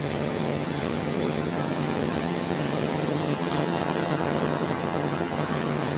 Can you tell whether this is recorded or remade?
remade